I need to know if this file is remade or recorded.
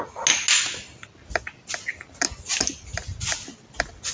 recorded